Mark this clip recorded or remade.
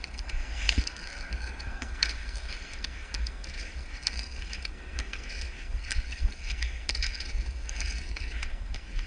remade